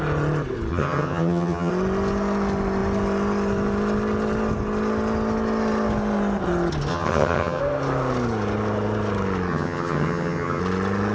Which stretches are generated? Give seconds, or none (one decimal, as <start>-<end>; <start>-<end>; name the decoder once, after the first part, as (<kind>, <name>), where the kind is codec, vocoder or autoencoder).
0.7-1.7 (vocoder, HiFi-GAN); 6.9-7.6; 9.5-10.6